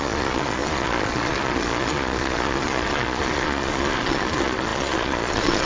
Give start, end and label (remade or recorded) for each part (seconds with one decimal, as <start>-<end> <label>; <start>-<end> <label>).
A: 0.0-5.7 remade